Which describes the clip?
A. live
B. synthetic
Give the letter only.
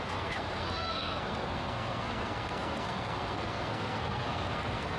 B